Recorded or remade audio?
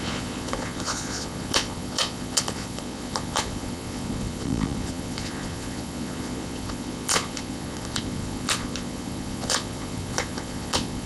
remade